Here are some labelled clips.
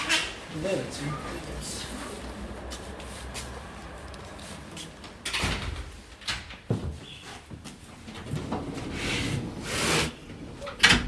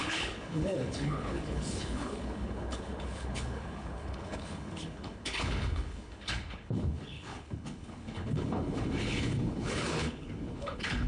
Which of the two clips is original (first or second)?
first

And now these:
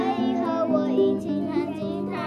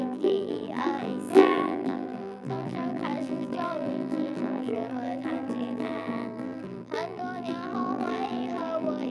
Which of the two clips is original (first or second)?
first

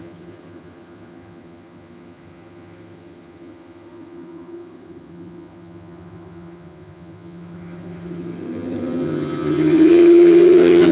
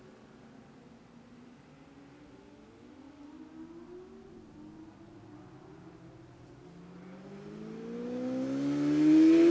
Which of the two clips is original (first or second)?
second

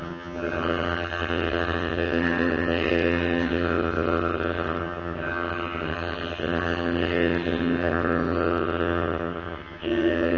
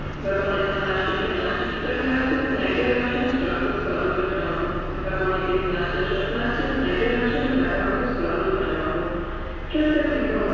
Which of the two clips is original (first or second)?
second